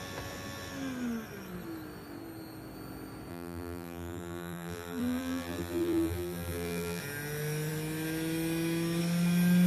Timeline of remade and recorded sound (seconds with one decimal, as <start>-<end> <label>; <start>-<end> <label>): 0.0-3.3 recorded; 3.3-7.0 remade; 7.0-9.7 recorded